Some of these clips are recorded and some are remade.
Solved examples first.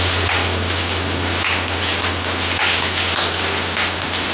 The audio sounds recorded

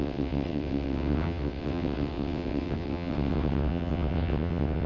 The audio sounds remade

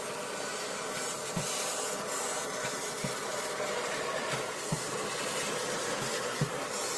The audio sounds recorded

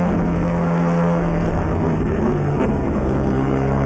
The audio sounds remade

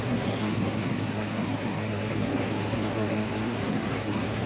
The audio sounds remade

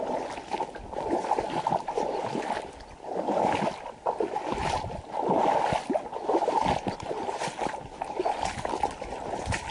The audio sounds recorded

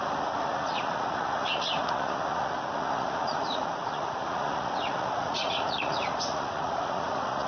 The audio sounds remade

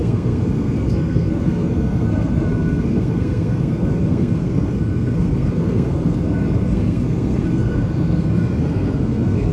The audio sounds remade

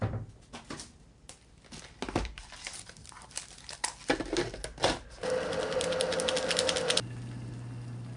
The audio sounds recorded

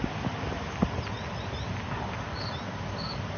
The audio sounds recorded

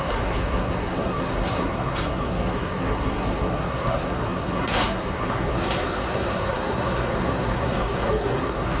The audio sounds remade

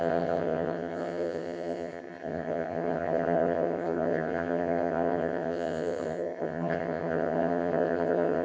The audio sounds remade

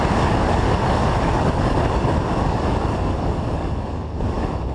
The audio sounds remade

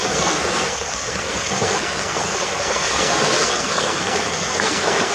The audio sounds remade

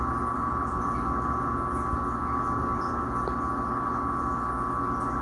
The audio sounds recorded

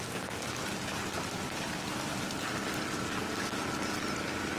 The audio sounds recorded